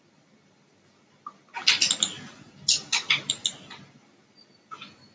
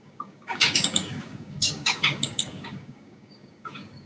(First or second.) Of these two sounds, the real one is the first